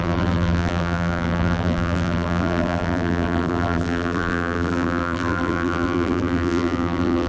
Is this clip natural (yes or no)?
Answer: no